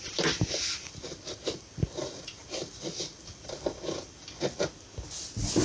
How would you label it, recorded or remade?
recorded